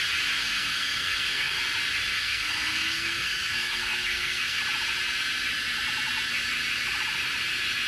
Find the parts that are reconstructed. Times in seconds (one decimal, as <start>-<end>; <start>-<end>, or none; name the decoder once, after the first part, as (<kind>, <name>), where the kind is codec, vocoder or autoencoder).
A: 0.4-1.6 (codec, SNAC); 2.1-4.6